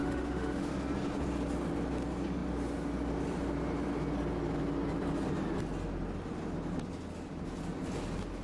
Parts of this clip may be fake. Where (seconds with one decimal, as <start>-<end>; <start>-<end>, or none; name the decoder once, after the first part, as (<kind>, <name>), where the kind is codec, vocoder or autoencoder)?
0.0-0.7 (autoencoder, DAC-VAE)